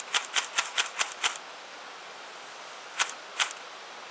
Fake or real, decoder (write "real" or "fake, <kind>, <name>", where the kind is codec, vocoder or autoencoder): real